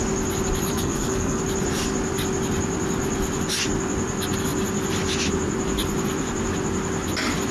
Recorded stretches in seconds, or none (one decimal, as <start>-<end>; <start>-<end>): 0.0-0.7; 1.4-7.5